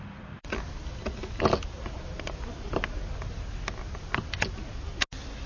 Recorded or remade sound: recorded